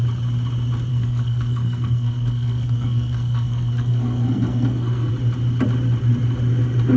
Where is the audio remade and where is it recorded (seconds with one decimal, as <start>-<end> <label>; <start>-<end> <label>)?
0.0-0.9 recorded; 0.9-5.1 remade; 5.1-7.0 recorded